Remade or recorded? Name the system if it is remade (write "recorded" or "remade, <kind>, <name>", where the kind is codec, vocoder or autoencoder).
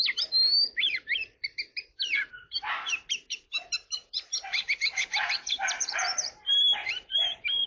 remade, vocoder, BigVGAN v2